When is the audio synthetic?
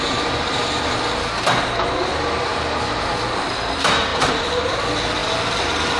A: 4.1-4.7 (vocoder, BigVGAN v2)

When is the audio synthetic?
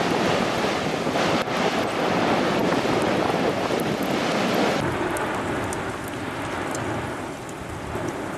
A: none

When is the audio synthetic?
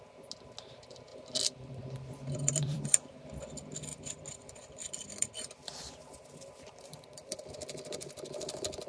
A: 1.1-3.3 (vocoder, BigVGAN v2); 3.9-7.5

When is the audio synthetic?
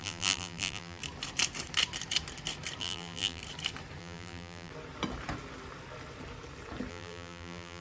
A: 0.0-1.0 (vocoder, BigVGAN v2); 2.8-3.4; 4.0-4.7; 6.9-7.8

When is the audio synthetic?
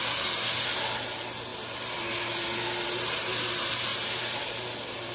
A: 3.9-4.4 (vocoder, BigVGAN v2)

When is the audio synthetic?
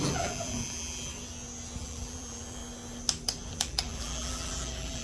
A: 0.0-1.1 (vocoder, BigVGAN v2); 1.8-2.6; 3.5-5.0